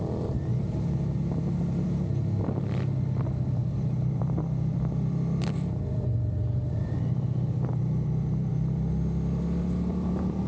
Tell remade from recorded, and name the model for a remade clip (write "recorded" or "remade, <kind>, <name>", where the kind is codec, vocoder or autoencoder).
remade, vocoder, BigVGAN v2